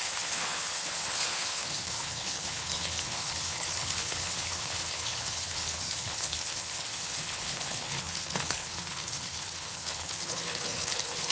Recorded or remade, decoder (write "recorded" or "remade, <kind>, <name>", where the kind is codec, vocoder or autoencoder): remade, codec, HILCodec